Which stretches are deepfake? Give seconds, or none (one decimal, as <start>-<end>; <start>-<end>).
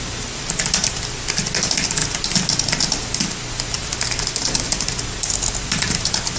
none